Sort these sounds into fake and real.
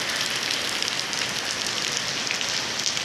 real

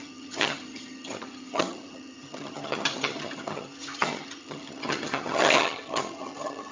fake